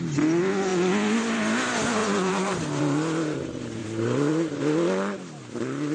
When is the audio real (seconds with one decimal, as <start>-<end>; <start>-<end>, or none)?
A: 0.0-2.0; 2.8-3.8; 4.6-5.9